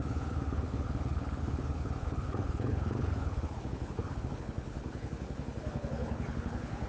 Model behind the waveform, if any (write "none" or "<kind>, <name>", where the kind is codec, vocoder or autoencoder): codec, HILCodec